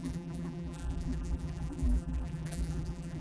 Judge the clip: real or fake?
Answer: fake